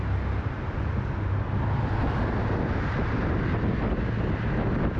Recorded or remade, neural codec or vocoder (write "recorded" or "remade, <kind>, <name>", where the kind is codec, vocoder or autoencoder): recorded